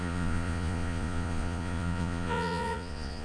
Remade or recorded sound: remade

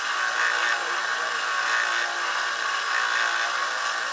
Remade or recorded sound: recorded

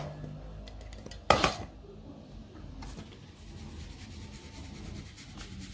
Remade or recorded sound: recorded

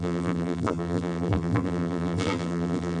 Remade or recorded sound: remade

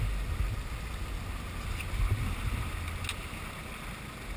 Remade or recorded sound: recorded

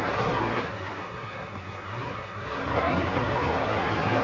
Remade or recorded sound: remade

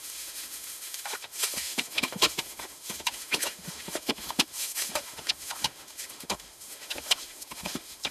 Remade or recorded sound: remade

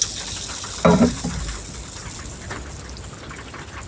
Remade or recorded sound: recorded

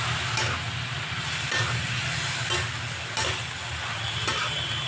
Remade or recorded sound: recorded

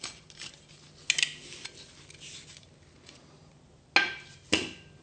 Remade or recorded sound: recorded